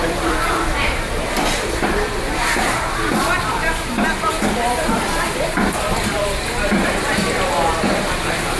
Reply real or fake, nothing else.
fake